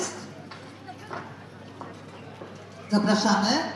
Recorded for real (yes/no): yes